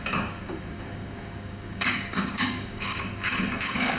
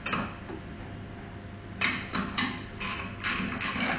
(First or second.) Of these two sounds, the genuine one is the second